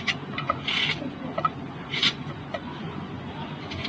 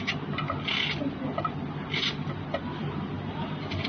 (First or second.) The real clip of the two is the second